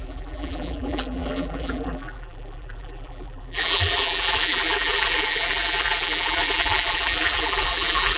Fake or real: fake